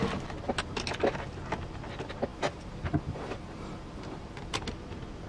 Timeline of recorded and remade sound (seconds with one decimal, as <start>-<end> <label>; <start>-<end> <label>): 0.0-2.3 recorded; 2.3-4.6 remade; 4.6-5.3 recorded